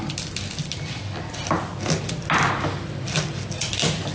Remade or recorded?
recorded